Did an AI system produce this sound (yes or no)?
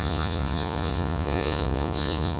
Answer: yes